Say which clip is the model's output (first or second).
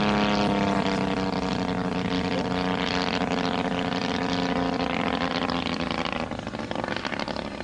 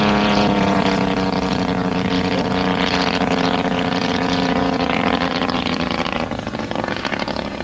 second